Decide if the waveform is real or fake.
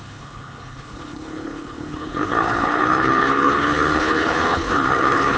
fake